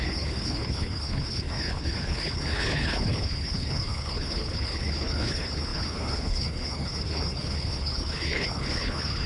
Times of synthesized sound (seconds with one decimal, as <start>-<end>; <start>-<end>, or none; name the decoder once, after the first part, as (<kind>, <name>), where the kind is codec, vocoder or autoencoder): 0.0-9.3 (codec, HILCodec)